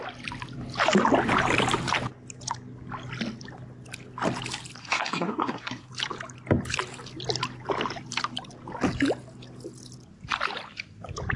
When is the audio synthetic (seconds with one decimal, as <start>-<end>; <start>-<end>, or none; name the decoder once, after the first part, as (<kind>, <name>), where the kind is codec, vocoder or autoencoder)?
4.8-5.9 (codec, SNAC)

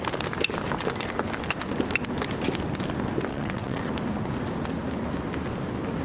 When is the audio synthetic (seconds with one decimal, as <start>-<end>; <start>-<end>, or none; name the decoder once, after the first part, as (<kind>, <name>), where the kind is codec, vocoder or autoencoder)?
3.3-3.9 (vocoder, WaveNeXt)

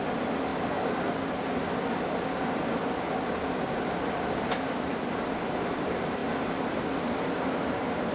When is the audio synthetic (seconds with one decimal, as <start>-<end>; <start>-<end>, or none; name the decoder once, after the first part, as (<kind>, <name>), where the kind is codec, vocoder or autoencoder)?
0.0-0.5 (vocoder, BigVGAN v2); 2.9-6.2

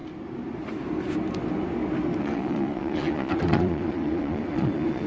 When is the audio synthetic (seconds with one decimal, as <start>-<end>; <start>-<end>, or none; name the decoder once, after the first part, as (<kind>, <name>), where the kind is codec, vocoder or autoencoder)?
2.2-5.1 (vocoder, Vocos)

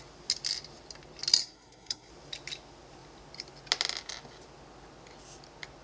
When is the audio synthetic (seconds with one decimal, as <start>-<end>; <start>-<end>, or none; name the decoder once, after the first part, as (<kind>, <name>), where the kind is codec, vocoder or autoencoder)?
1.4-2.1 (codec, SNAC)

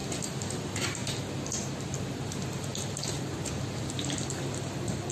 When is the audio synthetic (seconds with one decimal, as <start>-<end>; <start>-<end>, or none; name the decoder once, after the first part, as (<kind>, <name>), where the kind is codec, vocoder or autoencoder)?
none